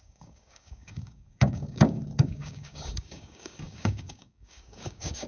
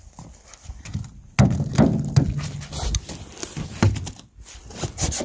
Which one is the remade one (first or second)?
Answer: first